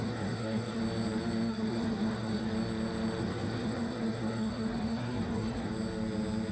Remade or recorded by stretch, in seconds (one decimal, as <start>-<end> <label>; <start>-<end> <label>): 0.0-0.8 remade; 0.8-1.5 recorded; 1.5-2.5 remade; 2.5-3.2 recorded; 3.2-5.7 remade; 5.7-6.5 recorded